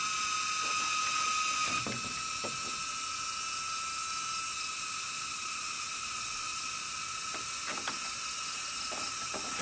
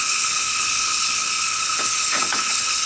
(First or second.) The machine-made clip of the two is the second